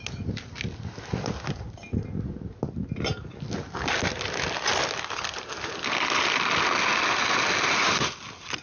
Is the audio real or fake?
real